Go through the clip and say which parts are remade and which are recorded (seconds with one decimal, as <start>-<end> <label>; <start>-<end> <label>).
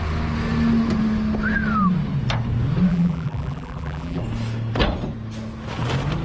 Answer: 0.0-2.9 recorded; 2.9-4.2 remade; 4.2-6.2 recorded